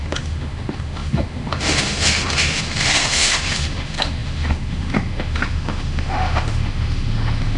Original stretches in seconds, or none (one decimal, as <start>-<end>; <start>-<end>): none